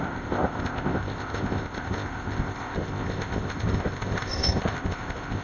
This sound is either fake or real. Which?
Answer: fake